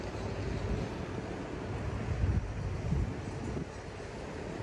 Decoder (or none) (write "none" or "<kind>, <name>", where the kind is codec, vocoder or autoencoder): none